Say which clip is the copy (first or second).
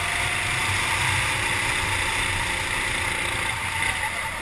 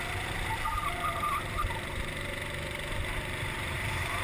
second